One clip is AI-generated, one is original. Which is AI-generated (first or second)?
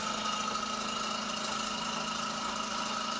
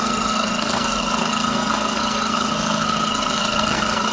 second